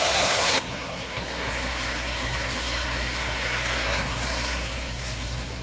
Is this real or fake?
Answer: fake